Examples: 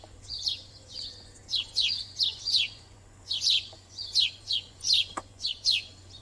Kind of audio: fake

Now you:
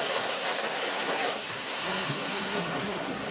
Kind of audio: fake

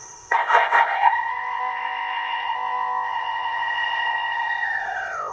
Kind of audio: fake